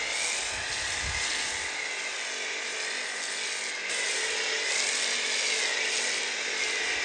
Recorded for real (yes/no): yes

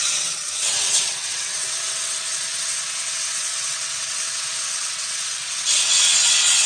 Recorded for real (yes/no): no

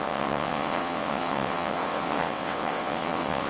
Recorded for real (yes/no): no